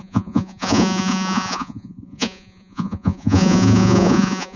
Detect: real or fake fake